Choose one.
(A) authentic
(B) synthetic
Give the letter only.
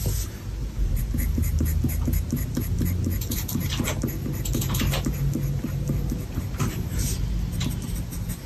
A